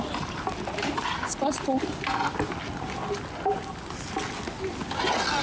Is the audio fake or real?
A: real